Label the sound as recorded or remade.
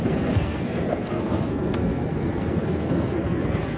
remade